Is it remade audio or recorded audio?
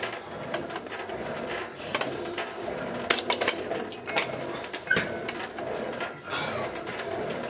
recorded